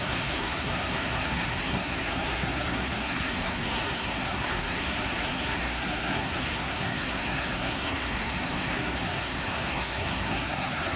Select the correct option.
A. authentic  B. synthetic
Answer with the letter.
B